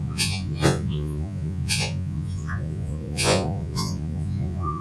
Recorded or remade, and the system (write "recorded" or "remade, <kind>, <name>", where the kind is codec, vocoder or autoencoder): remade, vocoder, Vocos